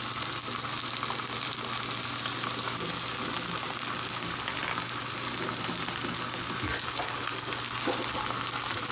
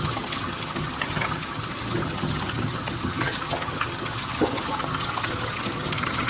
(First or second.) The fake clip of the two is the second